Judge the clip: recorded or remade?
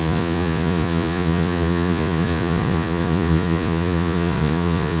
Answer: remade